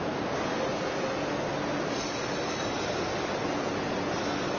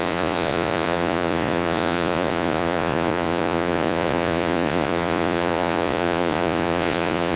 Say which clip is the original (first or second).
first